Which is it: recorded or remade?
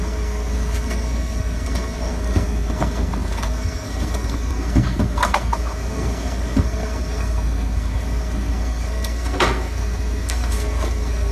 remade